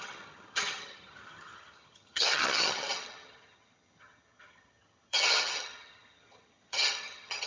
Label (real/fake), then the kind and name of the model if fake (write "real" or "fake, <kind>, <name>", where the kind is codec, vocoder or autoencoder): fake, vocoder, HiFi-GAN